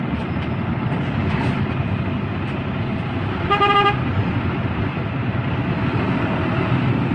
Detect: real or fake real